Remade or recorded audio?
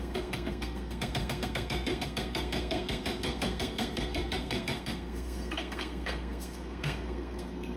remade